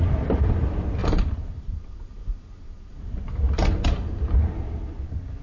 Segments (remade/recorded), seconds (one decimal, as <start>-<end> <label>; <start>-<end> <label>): 0.0-1.0 recorded; 1.0-4.2 remade; 4.2-5.4 recorded